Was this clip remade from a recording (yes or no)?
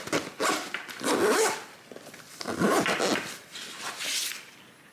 no